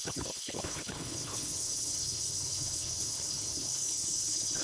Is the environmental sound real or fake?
fake